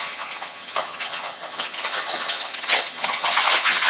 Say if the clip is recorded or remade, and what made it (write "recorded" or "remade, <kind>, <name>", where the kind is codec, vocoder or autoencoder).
remade, vocoder, HiFi-GAN